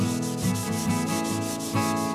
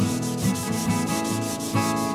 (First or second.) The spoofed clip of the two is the second